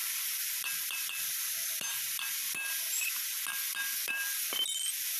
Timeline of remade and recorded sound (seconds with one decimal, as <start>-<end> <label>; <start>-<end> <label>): 0.0-3.1 remade; 3.1-3.5 recorded; 3.5-4.4 remade; 4.4-5.2 recorded